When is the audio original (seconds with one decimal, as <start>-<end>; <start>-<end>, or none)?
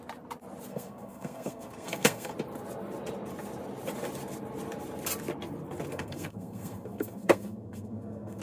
0.0-0.7; 2.3-5.9